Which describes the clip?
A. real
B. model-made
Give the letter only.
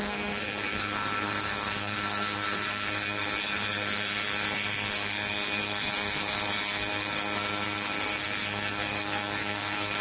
B